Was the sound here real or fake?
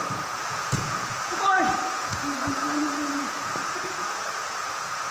fake